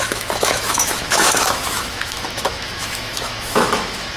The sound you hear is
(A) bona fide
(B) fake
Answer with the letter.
B